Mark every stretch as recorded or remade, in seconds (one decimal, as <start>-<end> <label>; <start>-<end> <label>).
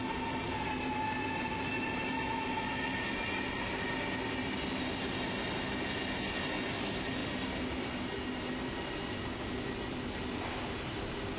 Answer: 0.0-11.4 recorded